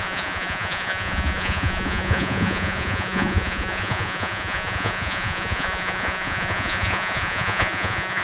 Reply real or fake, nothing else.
fake